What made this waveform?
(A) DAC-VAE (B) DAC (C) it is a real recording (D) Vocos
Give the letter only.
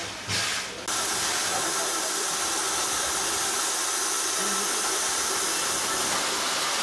C